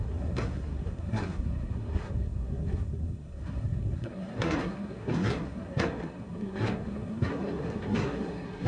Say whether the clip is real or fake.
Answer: fake